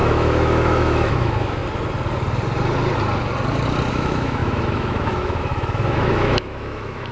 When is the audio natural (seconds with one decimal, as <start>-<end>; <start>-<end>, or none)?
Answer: 1.6-3.9